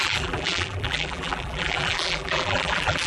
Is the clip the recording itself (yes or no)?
no